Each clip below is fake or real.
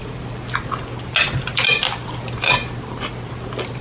real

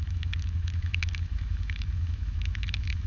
fake